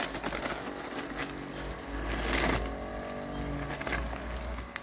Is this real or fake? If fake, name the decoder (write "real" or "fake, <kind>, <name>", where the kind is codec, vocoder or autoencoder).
real